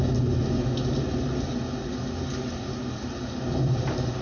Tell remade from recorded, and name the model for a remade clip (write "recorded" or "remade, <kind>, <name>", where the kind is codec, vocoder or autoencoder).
recorded